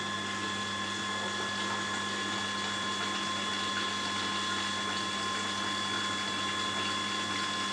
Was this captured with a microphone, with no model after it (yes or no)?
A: yes